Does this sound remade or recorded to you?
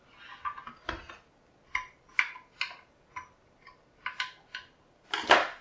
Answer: recorded